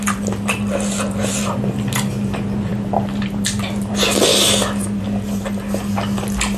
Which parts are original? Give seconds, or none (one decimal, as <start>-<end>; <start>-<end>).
0.0-6.6